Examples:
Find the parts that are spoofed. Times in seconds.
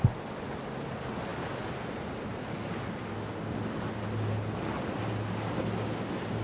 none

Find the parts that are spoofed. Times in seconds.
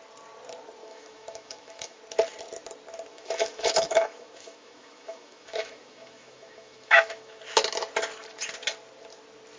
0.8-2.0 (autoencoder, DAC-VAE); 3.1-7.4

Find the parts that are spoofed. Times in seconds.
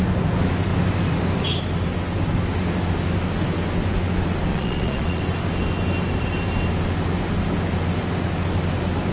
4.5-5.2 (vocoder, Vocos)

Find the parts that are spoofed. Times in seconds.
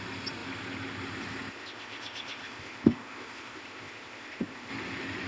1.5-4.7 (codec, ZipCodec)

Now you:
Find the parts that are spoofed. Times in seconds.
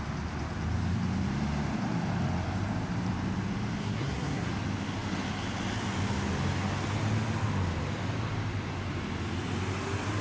3.8-4.5 (codec, SNAC)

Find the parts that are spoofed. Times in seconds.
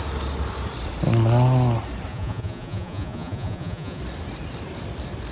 2.1-4.0 (vocoder, Vocos)